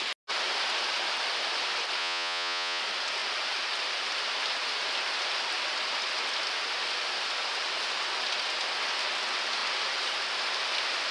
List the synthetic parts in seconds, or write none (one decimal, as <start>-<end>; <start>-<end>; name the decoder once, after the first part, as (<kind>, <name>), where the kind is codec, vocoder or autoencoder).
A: 2.0-2.8 (vocoder, Vocos)